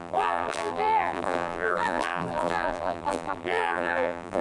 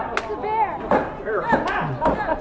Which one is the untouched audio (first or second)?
second